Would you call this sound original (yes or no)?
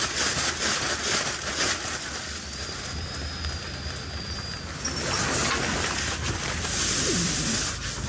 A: yes